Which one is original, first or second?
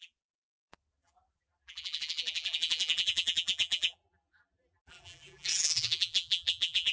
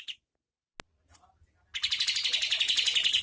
second